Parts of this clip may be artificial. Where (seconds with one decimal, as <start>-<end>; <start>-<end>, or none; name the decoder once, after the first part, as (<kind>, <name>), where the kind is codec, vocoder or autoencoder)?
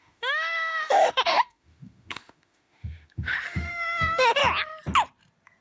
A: 0.0-4.4 (autoencoder, DAC-VAE)